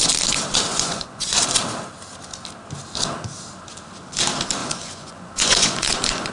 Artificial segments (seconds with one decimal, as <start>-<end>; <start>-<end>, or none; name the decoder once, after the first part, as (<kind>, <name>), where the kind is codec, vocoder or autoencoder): 0.7-1.4 (vocoder, Vocos); 4.6-6.3